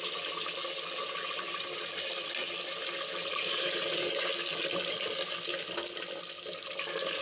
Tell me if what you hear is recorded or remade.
recorded